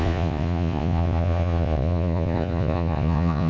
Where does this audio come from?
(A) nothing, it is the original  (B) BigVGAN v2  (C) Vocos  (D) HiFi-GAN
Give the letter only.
C